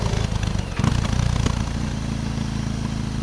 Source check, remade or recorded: recorded